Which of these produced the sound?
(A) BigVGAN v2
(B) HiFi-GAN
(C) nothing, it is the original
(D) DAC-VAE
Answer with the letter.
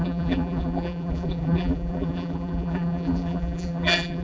A